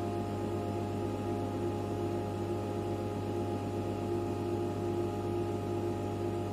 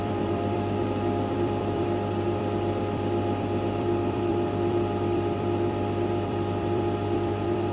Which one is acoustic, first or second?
first